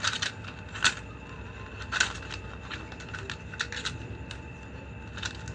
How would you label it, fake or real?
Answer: real